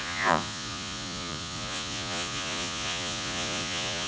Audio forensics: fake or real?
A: fake